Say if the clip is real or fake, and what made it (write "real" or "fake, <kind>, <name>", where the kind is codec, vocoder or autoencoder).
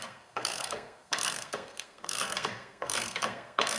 fake, codec, SNAC